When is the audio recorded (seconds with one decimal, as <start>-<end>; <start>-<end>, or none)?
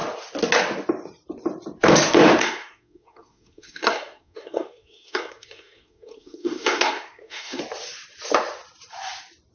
0.0-2.4; 7.6-9.5